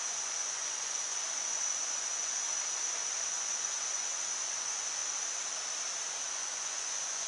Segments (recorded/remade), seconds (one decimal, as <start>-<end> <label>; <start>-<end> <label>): 0.0-2.5 remade; 2.5-3.3 recorded; 3.3-4.1 remade; 4.1-4.6 recorded; 4.6-5.0 remade; 5.0-6.3 recorded; 6.3-7.3 remade